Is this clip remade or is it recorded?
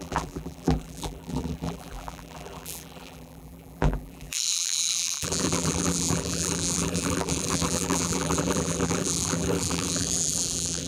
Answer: remade